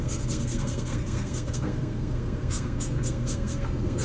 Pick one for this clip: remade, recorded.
remade